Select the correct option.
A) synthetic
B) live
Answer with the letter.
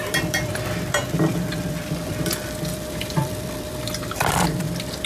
A